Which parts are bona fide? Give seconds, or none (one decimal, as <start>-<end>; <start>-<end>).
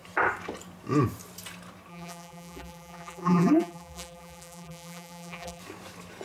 0.0-1.9; 5.6-6.2